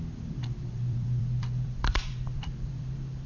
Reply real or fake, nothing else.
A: fake